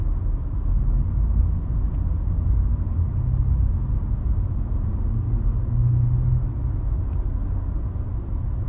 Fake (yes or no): no